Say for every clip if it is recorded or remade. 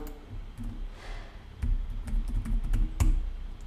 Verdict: recorded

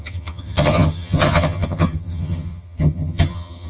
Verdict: remade